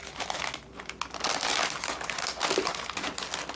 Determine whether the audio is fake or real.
real